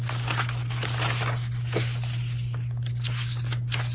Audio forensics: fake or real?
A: real